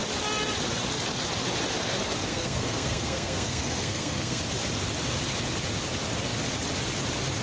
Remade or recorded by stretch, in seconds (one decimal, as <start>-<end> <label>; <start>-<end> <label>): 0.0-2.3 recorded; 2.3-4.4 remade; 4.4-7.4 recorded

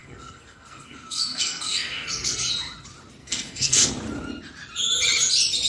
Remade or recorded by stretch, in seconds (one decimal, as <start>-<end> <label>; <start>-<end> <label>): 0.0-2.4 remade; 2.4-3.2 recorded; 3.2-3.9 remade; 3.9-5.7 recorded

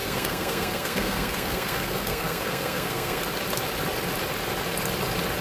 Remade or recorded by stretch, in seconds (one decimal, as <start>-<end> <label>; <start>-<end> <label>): 0.0-3.2 remade; 3.2-5.4 recorded